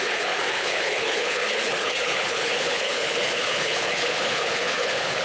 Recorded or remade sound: remade